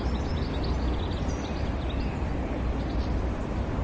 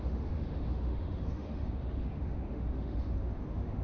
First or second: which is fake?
second